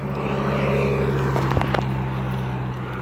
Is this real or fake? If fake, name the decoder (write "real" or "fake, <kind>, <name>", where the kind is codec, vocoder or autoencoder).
fake, vocoder, BigVGAN v2